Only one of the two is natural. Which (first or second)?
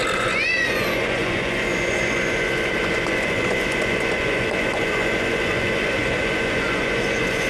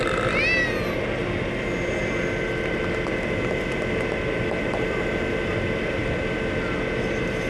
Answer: second